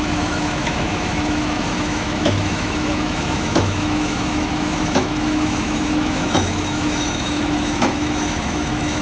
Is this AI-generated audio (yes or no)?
yes